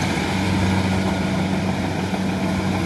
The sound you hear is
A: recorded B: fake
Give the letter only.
A